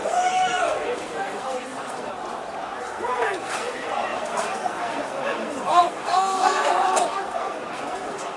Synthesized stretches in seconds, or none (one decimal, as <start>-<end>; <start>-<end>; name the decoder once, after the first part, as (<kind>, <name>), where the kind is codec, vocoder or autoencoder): 0.0-2.1 (codec, SNAC); 2.8-8.4